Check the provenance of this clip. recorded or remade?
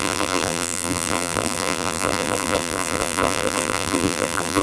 remade